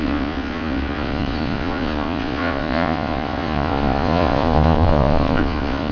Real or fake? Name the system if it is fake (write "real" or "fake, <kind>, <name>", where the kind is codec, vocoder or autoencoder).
fake, vocoder, Vocos